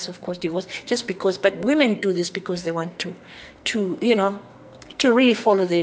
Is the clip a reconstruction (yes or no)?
yes